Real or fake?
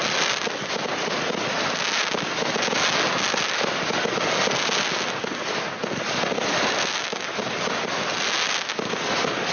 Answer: real